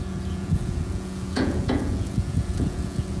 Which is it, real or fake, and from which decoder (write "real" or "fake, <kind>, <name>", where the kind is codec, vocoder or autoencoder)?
fake, vocoder, Vocos